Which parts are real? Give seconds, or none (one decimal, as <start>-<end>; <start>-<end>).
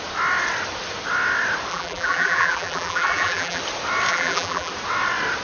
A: 0.0-1.7; 3.6-4.1; 4.7-5.4